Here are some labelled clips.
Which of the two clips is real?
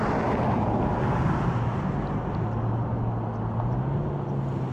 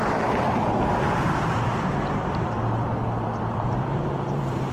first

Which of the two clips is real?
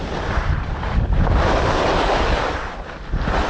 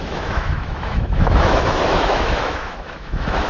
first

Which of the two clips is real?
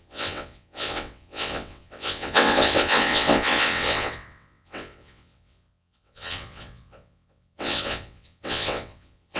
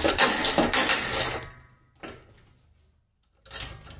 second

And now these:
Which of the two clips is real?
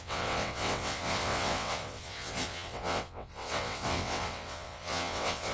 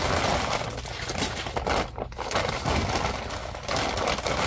second